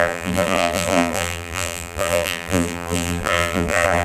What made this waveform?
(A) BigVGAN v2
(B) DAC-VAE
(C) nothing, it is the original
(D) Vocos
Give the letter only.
A